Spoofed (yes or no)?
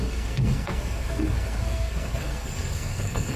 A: yes